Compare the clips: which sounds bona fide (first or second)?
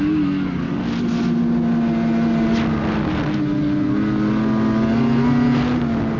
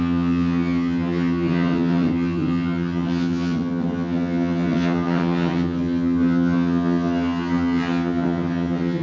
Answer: first